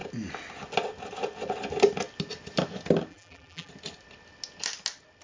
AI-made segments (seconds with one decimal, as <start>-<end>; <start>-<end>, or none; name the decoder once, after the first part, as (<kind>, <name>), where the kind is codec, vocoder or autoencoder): 3.1-3.7 (vocoder, BigVGAN v2)